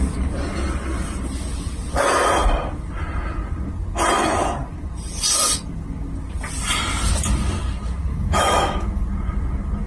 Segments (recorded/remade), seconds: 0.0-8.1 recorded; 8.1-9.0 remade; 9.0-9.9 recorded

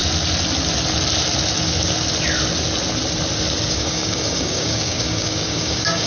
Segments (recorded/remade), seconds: 0.0-3.7 recorded; 3.7-6.1 remade

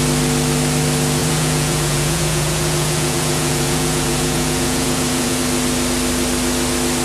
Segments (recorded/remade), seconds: 0.0-1.2 recorded; 1.2-5.4 remade; 5.4-7.0 recorded

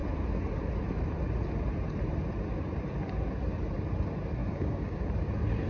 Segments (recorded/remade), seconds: 0.0-4.4 recorded; 4.4-5.1 remade; 5.1-5.7 recorded

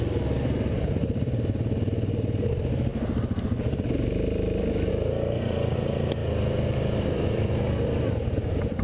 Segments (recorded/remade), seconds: 0.0-2.9 recorded; 2.9-4.9 remade; 4.9-6.2 recorded; 6.2-8.8 remade